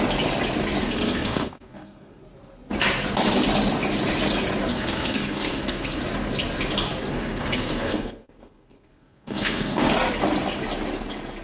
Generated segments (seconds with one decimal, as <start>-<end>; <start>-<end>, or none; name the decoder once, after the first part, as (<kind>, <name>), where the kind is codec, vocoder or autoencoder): 0.8-2.2 (codec, SNAC); 4.7-6.0; 7.1-9.9